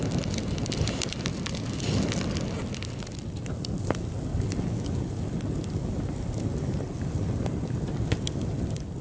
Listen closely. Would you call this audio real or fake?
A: real